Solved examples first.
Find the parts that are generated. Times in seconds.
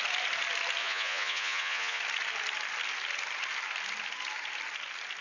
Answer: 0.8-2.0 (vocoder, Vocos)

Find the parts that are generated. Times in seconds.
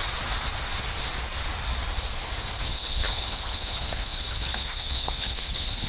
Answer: 2.6-5.9 (codec, HILCodec)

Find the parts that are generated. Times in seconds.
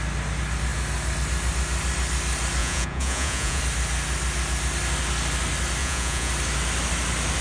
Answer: 2.6-3.6 (vocoder, Vocos); 5.8-6.3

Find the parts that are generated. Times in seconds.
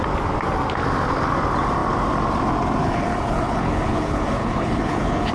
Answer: 2.8-5.3 (codec, HILCodec)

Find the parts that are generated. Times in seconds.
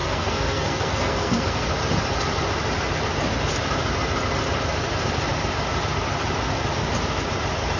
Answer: 0.0-1.7 (codec, SNAC)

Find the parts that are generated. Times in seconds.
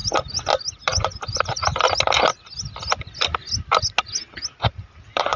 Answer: 0.8-1.7 (vocoder, BigVGAN v2); 4.7-5.4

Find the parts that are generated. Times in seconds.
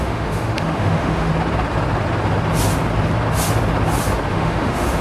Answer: 0.0-1.3 (autoencoder, DAC-VAE); 4.3-5.0